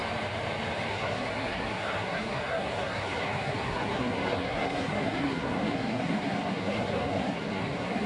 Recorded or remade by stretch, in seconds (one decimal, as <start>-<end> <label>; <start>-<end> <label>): 0.0-0.9 recorded; 0.9-8.1 remade

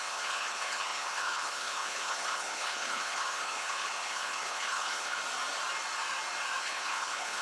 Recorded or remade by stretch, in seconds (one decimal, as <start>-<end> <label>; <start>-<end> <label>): 0.0-5.2 remade; 5.2-6.6 recorded; 6.6-7.4 remade

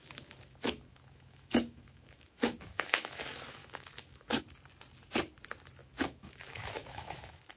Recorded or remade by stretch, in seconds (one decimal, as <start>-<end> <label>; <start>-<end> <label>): 0.0-3.2 remade; 3.2-3.6 recorded; 3.6-4.4 remade; 4.4-5.8 recorded; 5.8-7.6 remade